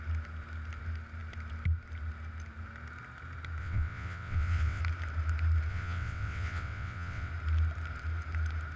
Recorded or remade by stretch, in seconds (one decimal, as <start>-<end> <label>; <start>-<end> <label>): 0.0-3.6 recorded; 3.6-4.8 remade; 4.8-5.7 recorded; 5.7-7.3 remade; 7.3-8.8 recorded

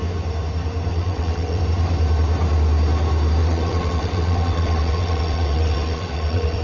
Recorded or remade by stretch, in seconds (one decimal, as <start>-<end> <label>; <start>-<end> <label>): 0.0-0.9 recorded; 0.9-1.6 remade; 1.6-3.4 recorded; 3.4-6.6 remade

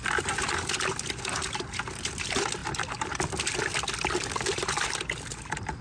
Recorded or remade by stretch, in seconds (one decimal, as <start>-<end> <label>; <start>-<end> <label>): 0.0-5.8 recorded

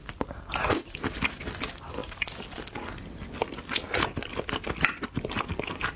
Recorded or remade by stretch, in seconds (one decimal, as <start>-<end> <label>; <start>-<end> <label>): 0.0-6.0 recorded

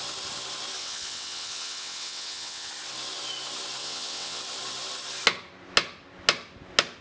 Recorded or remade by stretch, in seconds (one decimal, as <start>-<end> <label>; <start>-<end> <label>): 0.0-0.8 recorded; 0.8-2.7 remade; 2.7-3.8 recorded; 3.8-4.4 remade; 4.4-7.0 recorded

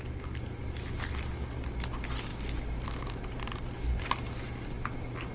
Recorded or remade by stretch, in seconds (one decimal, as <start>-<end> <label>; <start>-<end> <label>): 0.0-5.3 recorded